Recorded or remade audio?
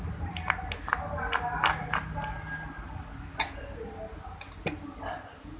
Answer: recorded